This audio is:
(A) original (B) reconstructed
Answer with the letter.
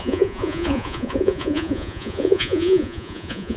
B